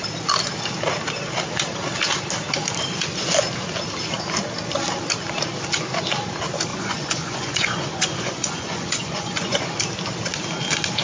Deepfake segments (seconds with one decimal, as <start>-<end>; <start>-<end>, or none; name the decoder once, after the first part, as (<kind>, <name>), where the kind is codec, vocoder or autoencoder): 6.7-9.7 (vocoder, Vocos)